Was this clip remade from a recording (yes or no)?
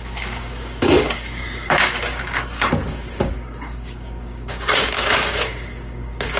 yes